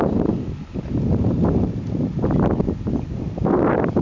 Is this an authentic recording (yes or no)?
yes